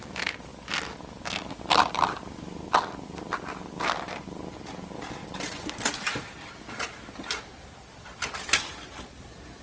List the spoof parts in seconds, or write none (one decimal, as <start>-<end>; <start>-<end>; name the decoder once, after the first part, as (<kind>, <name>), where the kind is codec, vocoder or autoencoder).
0.0-0.5 (vocoder, BigVGAN v2); 1.5-9.6